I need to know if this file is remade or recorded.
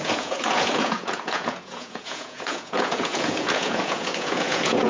remade